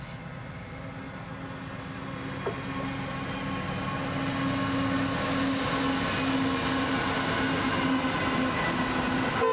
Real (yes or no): yes